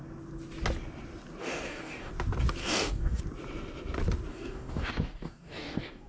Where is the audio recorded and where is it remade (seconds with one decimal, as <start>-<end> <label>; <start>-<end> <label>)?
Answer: 0.0-1.4 recorded; 1.4-2.1 remade; 2.1-2.6 recorded; 2.6-3.2 remade; 3.2-4.3 recorded; 4.3-6.1 remade